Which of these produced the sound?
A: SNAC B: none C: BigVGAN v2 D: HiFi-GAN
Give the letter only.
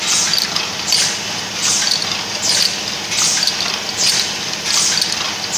B